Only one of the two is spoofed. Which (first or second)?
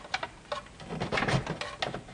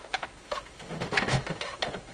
second